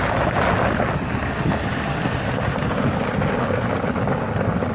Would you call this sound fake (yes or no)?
no